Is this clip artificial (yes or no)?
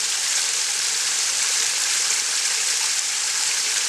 yes